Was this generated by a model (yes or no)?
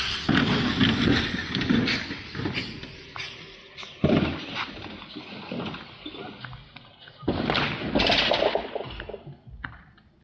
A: no